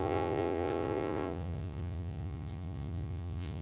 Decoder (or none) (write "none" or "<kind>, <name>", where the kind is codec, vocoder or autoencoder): vocoder, Vocos